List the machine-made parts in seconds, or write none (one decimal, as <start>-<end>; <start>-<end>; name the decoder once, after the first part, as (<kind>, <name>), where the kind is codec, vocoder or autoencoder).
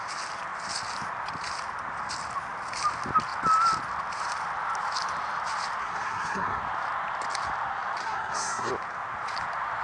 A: 5.8-6.6 (codec, SNAC); 8.0-8.7